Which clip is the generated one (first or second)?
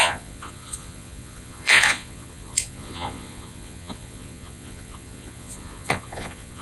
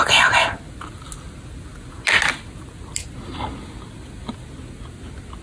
first